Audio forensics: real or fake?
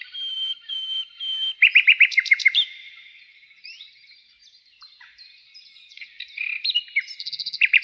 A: fake